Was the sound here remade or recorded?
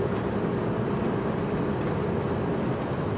recorded